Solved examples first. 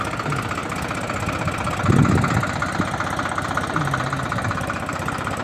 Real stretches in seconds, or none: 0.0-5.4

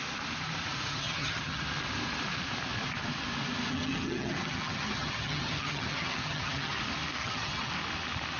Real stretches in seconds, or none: 0.0-0.9; 1.6-3.7; 6.7-7.2; 7.7-8.4

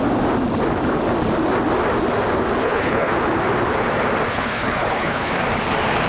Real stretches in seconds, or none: 0.0-2.6; 3.1-4.3; 5.3-6.1

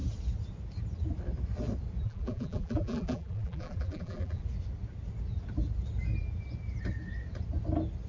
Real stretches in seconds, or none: 0.0-2.0; 4.4-8.1

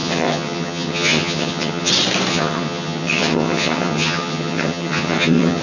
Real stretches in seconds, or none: 1.9-2.3